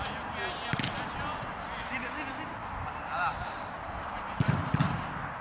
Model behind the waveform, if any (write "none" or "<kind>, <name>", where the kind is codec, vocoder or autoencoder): none